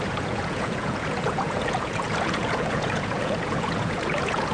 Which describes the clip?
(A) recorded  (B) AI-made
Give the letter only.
B